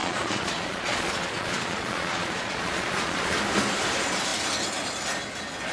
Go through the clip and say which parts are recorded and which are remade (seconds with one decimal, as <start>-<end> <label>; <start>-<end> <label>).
0.0-3.4 remade; 3.4-5.7 recorded